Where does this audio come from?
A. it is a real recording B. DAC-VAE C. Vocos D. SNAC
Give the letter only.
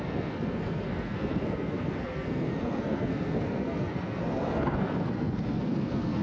D